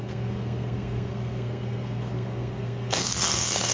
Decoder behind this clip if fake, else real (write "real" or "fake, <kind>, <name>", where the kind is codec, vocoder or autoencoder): fake, codec, SNAC